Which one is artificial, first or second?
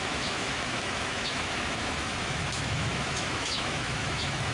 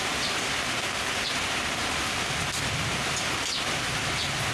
first